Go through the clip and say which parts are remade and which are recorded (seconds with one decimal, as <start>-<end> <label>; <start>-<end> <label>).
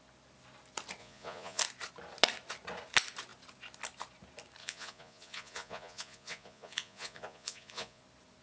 0.0-1.0 recorded; 1.0-1.6 remade; 1.6-4.6 recorded; 4.6-8.0 remade; 8.0-8.4 recorded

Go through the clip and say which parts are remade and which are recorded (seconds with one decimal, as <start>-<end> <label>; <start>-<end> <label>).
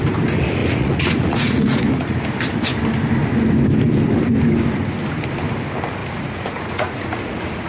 0.0-0.6 recorded; 0.6-2.2 remade; 2.2-6.0 recorded; 6.0-7.7 remade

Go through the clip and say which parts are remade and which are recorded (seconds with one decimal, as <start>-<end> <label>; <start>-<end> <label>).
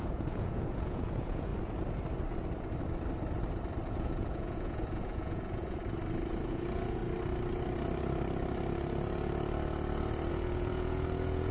0.0-1.5 remade; 1.5-3.9 recorded; 3.9-5.8 remade; 5.8-6.5 recorded; 6.5-7.0 remade; 7.0-10.3 recorded; 10.3-11.5 remade